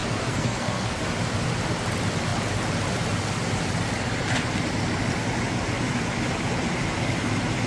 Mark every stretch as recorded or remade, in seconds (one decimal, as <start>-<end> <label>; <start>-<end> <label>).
0.0-1.0 remade; 1.0-7.7 recorded

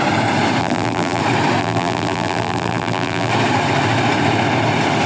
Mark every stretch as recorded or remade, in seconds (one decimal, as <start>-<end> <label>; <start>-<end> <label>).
0.0-0.6 recorded; 0.6-1.2 remade; 1.2-1.6 recorded; 1.6-3.3 remade; 3.3-5.1 recorded

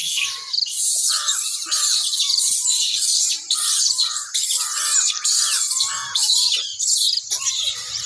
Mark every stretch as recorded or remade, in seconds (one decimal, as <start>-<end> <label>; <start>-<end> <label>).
0.0-8.1 remade

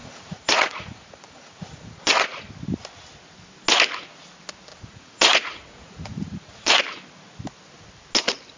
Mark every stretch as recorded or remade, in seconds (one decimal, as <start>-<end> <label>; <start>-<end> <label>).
0.0-2.5 remade; 2.5-4.7 recorded; 4.7-6.8 remade; 6.8-8.6 recorded